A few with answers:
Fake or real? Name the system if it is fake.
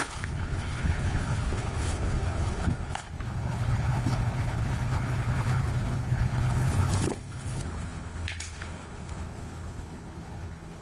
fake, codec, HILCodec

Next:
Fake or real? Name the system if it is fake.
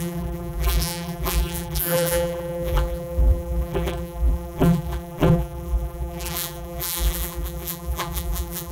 fake, vocoder, BigVGAN v2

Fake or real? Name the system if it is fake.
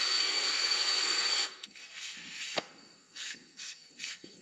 fake, codec, SNAC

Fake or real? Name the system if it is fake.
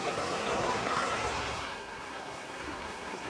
fake, codec, SNAC